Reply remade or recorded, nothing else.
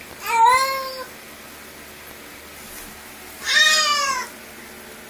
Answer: recorded